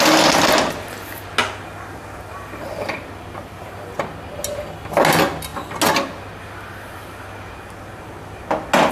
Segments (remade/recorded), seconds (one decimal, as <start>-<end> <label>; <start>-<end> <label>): 0.0-8.9 recorded